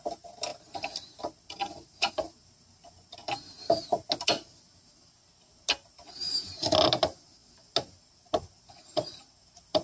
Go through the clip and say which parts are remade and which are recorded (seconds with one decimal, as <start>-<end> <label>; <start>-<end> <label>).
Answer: 0.0-9.8 recorded